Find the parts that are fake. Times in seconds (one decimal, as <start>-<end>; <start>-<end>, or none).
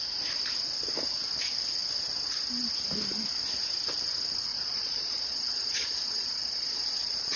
4.5-7.4